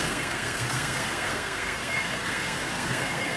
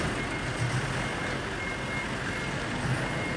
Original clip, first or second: second